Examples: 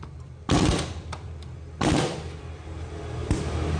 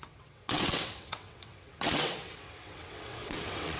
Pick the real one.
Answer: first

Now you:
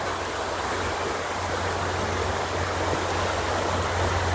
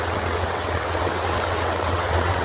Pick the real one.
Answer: first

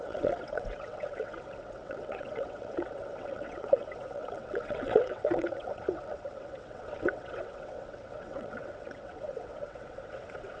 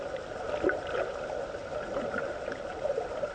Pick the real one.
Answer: second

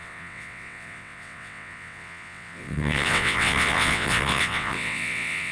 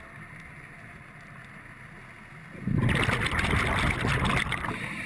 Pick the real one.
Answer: second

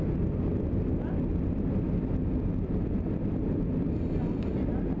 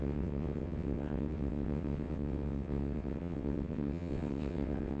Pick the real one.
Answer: first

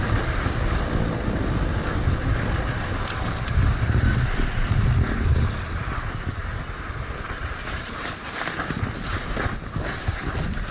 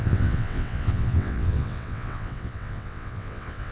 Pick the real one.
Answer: first